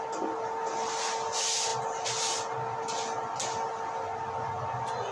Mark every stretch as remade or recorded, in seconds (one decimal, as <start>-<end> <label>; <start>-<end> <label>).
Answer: 0.0-5.1 recorded